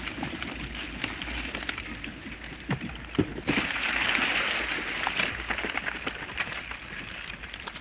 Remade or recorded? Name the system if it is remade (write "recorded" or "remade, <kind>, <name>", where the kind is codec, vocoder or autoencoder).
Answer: recorded